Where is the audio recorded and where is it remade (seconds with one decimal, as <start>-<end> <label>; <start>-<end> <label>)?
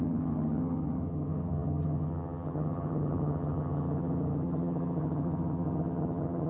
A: 0.0-6.5 remade